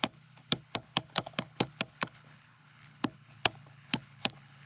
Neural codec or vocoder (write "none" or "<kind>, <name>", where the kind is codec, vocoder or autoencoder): codec, HILCodec